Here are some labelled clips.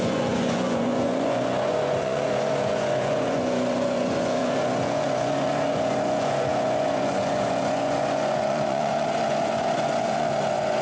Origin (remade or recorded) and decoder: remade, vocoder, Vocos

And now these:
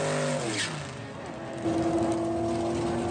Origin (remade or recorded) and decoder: recorded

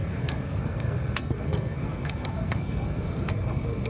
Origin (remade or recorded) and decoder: remade, codec, SNAC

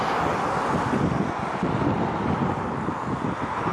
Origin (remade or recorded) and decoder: recorded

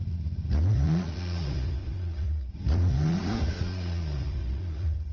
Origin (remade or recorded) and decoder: remade, vocoder, Vocos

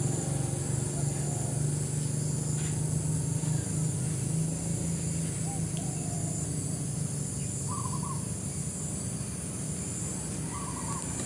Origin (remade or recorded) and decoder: recorded